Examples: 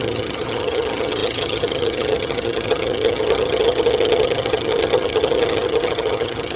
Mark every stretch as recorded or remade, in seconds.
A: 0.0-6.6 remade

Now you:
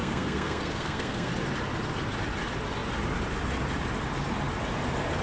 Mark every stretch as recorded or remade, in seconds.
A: 0.0-1.3 remade; 1.3-5.2 recorded

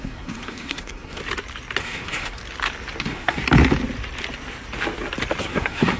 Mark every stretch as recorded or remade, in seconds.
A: 0.0-1.2 remade; 1.2-1.8 recorded; 1.8-2.4 remade; 2.4-3.0 recorded; 3.0-3.4 remade; 3.4-5.4 recorded; 5.4-6.0 remade

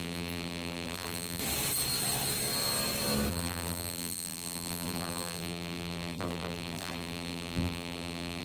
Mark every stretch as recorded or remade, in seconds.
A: 0.0-1.4 remade; 1.4-3.3 recorded; 3.3-8.4 remade